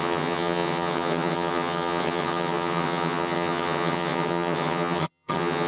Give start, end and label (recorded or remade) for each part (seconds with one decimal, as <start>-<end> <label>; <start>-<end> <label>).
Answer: 0.0-5.7 remade